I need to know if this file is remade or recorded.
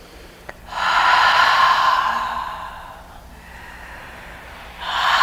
recorded